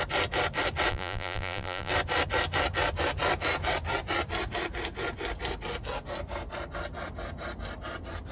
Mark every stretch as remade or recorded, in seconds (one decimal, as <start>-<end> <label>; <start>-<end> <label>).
0.0-0.9 recorded; 0.9-1.9 remade; 1.9-8.3 recorded